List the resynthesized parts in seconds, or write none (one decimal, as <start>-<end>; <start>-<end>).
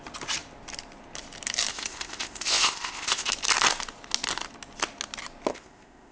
1.7-3.3; 5.5-6.1